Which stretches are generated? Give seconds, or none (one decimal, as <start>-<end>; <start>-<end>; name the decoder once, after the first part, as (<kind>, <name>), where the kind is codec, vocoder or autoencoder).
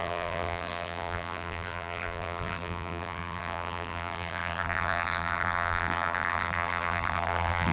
0.0-7.7 (vocoder, BigVGAN v2)